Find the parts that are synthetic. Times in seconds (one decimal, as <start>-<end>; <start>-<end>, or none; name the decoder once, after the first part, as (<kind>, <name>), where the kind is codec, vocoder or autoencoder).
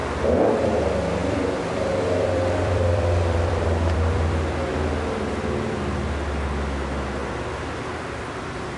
1.2-5.8 (vocoder, BigVGAN v2)